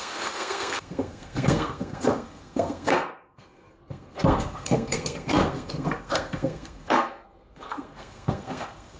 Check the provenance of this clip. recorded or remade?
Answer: remade